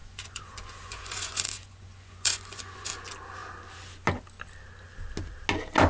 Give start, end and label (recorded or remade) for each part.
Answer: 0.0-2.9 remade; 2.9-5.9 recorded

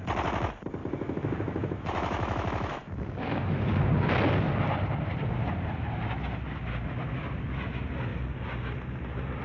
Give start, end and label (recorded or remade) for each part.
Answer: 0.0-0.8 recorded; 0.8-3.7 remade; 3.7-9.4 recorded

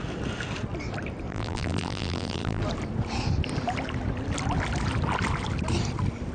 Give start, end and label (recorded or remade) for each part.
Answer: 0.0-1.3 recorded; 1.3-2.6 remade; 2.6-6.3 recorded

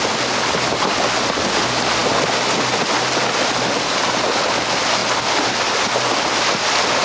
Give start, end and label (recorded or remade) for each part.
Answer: 0.0-7.0 recorded

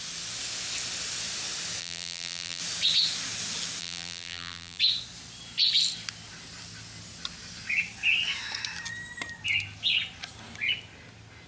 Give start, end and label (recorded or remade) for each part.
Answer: 0.0-1.8 recorded; 1.8-2.6 remade; 2.6-3.8 recorded; 3.8-4.8 remade; 4.8-11.5 recorded

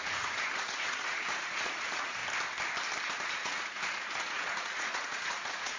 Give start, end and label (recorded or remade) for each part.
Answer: 0.0-2.2 remade; 2.2-3.0 recorded; 3.0-5.8 remade

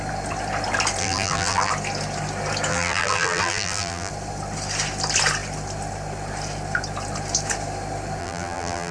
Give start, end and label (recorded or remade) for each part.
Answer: 0.0-1.0 recorded; 1.0-1.7 remade; 1.7-2.7 recorded; 2.7-4.1 remade; 4.1-8.2 recorded; 8.2-8.9 remade

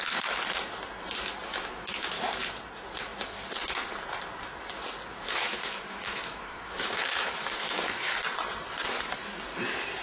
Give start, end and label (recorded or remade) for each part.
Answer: 0.0-1.5 recorded; 1.5-2.1 remade; 2.1-5.1 recorded; 5.1-8.1 remade; 8.1-10.0 recorded